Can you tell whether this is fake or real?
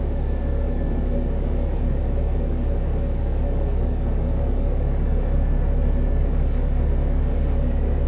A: fake